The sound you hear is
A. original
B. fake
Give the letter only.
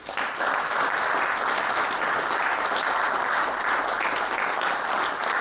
A